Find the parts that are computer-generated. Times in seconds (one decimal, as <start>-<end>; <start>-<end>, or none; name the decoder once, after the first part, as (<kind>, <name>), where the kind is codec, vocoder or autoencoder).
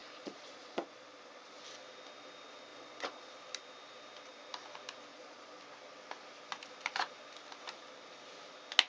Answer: 0.0-1.6 (vocoder, Vocos); 2.7-3.3; 5.1-5.6